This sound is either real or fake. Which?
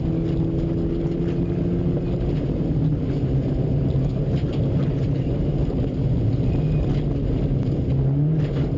real